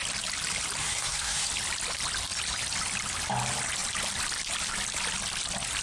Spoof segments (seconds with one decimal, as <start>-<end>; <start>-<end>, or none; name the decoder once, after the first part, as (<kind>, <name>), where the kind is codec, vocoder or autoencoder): 0.8-1.5 (codec, SNAC)